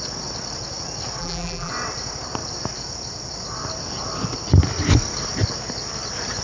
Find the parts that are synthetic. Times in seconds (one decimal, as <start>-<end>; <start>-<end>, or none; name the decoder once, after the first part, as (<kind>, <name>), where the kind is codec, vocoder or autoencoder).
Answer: 1.2-1.7 (vocoder, BigVGAN v2)